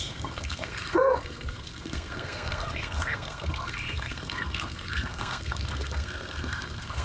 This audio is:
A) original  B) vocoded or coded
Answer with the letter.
B